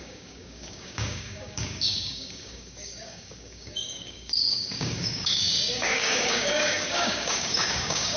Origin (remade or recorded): remade